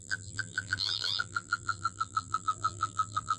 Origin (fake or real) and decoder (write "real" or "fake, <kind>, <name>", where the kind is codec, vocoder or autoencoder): fake, vocoder, BigVGAN v2